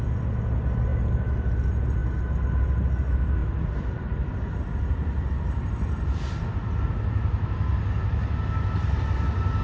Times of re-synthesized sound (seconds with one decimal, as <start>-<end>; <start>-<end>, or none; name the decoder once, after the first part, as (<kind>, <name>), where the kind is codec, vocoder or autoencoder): 0.9-1.5 (vocoder, BigVGAN v2); 3.4-6.8

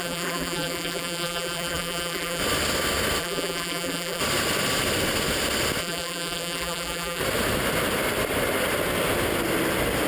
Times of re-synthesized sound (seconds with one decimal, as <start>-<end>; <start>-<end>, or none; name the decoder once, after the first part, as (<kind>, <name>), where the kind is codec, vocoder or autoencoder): 0.0-2.4 (vocoder, BigVGAN v2); 3.2-4.2; 5.8-7.2